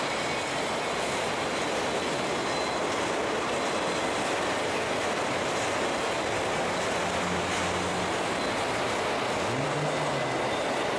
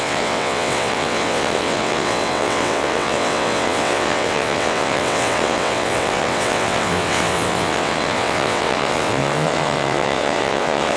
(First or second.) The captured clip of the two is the first